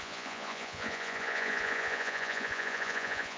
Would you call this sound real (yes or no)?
no